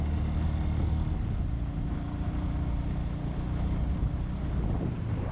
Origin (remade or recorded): recorded